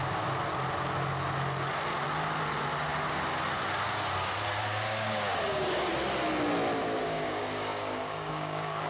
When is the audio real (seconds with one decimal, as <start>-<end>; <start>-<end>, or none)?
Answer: 0.0-4.6; 5.9-7.0